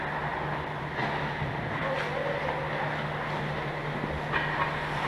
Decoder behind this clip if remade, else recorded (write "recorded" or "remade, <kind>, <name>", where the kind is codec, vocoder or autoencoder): recorded